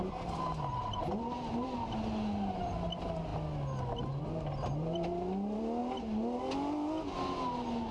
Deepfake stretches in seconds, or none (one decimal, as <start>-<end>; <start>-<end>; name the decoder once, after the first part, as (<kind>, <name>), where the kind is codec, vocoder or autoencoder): none